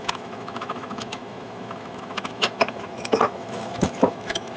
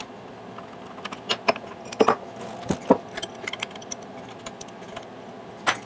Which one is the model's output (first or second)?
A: first